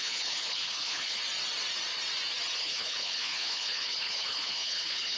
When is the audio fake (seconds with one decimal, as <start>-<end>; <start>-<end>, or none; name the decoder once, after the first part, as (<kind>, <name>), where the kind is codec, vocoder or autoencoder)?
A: 0.0-1.2 (codec, HILCodec); 2.6-5.2